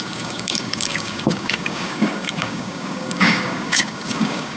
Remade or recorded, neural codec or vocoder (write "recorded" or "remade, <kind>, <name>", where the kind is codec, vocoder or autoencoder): remade, codec, DAC